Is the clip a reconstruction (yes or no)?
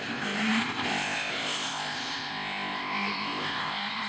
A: yes